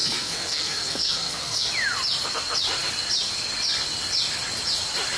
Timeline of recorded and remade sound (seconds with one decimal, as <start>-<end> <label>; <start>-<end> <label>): 0.0-1.7 remade; 1.7-5.2 recorded